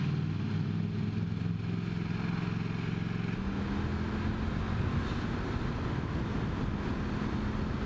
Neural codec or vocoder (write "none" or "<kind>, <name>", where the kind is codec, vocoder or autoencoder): none